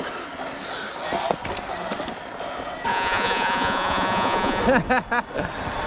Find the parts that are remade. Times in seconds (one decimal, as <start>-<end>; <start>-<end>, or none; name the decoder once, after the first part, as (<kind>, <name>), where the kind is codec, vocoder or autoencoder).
2.9-4.6 (vocoder, Vocos)